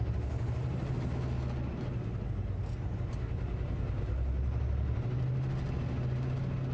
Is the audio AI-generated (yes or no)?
no